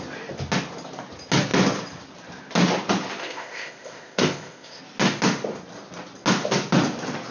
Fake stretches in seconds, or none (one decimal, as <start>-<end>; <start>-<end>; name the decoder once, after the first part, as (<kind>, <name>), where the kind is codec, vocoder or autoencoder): 3.2-4.8 (codec, ZipCodec)